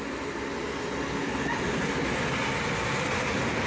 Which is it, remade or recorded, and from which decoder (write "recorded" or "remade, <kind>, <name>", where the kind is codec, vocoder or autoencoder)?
recorded